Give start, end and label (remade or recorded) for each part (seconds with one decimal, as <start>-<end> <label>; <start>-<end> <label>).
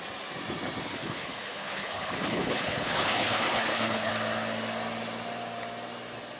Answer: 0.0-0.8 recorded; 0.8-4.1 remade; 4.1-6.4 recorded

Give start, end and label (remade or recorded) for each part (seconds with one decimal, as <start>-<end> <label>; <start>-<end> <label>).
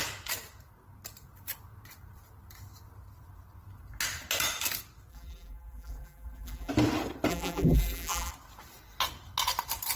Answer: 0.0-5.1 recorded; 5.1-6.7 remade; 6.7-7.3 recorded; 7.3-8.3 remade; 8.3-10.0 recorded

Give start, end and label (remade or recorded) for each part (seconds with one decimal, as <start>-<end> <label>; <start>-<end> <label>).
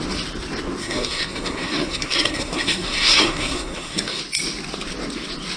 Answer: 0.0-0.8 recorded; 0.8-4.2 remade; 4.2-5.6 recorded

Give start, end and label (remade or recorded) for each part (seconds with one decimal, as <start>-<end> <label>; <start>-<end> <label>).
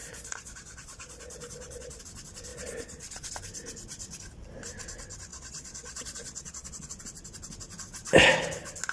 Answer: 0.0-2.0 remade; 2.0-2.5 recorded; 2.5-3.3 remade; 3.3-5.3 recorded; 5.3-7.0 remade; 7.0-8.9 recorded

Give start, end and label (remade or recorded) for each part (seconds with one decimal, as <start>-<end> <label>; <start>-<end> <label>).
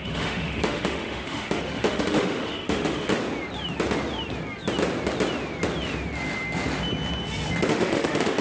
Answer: 0.0-3.1 remade; 3.1-7.7 recorded; 7.7-8.4 remade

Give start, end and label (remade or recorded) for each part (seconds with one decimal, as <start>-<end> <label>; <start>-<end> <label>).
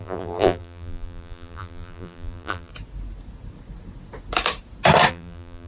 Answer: 0.0-2.7 remade; 2.7-5.1 recorded; 5.1-5.7 remade